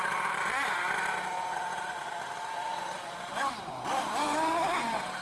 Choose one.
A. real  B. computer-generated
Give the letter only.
A